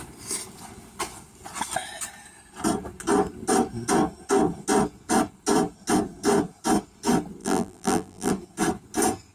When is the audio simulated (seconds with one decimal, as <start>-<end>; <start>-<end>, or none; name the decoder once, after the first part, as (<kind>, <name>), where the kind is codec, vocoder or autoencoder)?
7.4-8.3 (vocoder, BigVGAN v2)